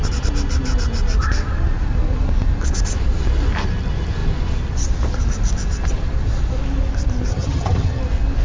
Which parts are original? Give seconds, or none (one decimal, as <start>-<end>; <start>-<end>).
0.0-7.3; 8.0-8.4